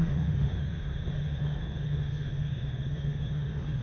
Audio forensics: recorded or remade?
remade